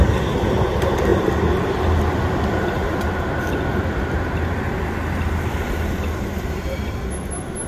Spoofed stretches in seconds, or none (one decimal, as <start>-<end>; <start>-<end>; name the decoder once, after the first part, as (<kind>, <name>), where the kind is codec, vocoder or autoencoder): none